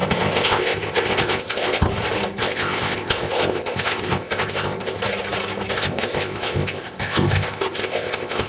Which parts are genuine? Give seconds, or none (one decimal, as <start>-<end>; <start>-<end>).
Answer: 1.9-2.4; 5.0-5.7

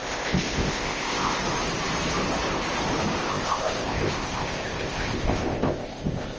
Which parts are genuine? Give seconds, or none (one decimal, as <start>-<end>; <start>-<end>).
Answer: 1.4-3.2

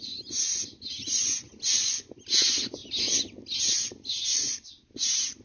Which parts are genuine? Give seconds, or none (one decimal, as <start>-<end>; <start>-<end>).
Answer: 0.0-5.4

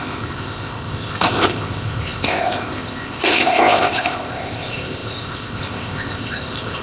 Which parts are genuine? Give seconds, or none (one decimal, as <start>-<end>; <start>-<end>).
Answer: none

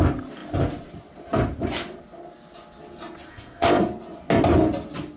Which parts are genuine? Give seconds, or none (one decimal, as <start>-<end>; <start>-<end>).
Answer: 0.0-3.3; 3.8-5.2

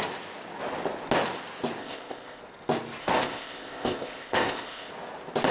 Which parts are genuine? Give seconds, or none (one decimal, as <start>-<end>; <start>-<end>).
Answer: 0.0-1.8; 2.4-3.0; 4.9-5.5

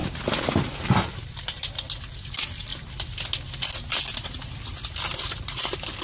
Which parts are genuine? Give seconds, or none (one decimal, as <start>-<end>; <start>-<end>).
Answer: 0.0-6.0

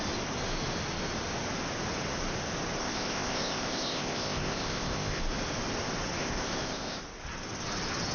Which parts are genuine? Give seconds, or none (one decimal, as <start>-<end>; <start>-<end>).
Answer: 0.0-2.8; 5.2-6.2; 7.0-8.1